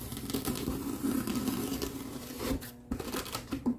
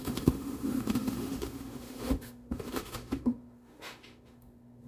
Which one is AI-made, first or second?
second